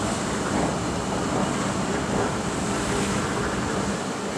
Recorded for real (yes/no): no